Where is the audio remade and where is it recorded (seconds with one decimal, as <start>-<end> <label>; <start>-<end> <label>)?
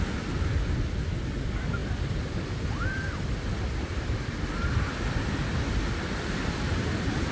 0.0-7.3 recorded